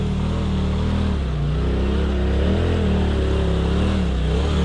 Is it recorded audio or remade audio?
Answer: recorded